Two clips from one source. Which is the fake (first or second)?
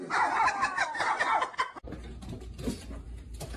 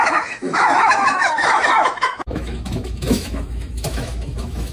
second